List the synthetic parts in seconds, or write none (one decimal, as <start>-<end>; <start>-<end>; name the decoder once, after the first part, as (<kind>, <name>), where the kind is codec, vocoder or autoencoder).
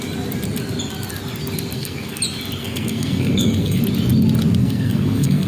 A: 1.7-2.2 (codec, SNAC); 2.6-3.8; 4.6-5.5